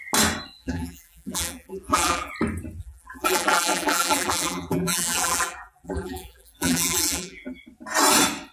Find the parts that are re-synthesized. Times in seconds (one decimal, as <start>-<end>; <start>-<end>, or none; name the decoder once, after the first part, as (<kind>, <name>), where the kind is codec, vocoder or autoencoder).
0.6-2.3 (vocoder, BigVGAN v2); 2.8-7.6

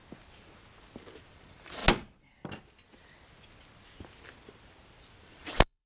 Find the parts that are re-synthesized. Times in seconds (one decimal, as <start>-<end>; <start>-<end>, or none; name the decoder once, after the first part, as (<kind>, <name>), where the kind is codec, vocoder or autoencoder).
1.2-1.8 (vocoder, BigVGAN v2); 5.2-5.9